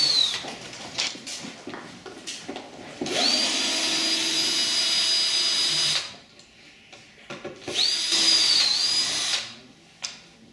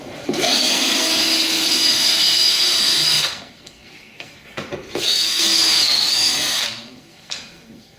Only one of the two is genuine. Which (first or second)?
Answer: first